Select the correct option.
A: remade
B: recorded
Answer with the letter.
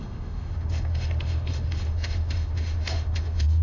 A